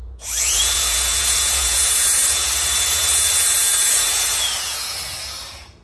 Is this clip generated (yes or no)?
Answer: yes